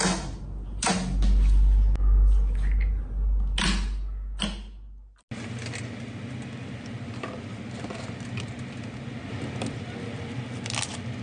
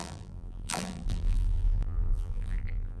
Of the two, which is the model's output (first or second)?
second